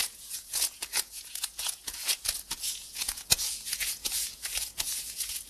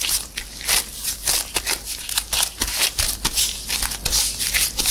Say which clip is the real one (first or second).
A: second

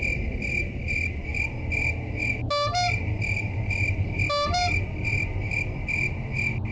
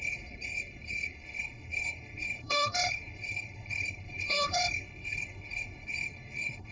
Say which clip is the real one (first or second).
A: first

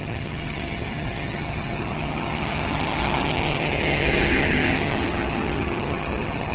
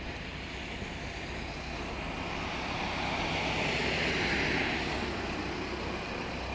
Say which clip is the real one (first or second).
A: second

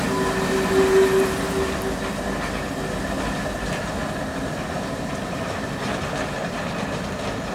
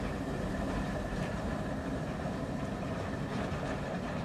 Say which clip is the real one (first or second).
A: first